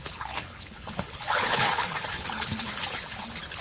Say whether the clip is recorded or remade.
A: remade